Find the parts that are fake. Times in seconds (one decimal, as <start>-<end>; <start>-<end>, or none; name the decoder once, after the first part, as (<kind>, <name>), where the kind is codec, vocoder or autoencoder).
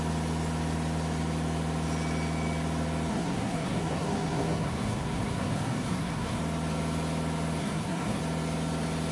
3.1-6.4 (codec, SNAC); 7.6-8.2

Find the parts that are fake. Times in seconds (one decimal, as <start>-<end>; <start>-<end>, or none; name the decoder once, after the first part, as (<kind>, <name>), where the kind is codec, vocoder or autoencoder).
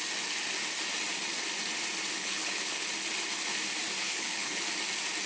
2.1-2.9 (codec, HILCodec); 4.0-4.6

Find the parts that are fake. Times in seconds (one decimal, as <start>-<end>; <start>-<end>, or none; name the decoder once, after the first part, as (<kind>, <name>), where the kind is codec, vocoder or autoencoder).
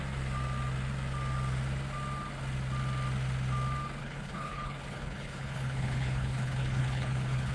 4.0-7.5 (codec, HILCodec)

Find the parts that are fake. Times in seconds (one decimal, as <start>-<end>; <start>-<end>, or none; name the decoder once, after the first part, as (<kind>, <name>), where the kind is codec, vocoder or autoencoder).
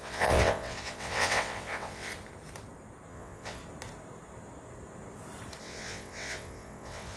0.0-2.1 (vocoder, WaveNeXt); 3.1-3.6; 5.6-7.2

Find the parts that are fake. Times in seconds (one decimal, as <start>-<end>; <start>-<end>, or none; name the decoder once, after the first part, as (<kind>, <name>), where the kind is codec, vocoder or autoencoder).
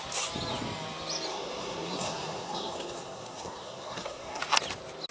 1.3-4.4 (codec, SNAC)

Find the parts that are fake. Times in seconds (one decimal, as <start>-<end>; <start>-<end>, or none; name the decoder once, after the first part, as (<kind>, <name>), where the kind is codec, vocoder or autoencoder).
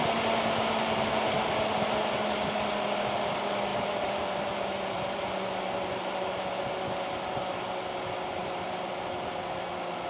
3.7-5.2 (vocoder, BigVGAN v2); 8.4-8.9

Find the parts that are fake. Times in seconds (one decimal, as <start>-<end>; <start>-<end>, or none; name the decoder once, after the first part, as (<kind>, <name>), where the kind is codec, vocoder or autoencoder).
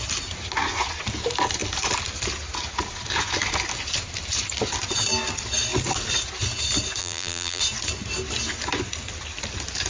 7.0-7.6 (vocoder, BigVGAN v2)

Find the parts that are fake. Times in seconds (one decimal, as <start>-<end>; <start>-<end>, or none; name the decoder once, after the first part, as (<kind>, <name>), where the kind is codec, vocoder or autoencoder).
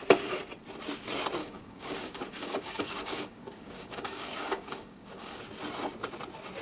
1.4-5.4 (codec, DAC)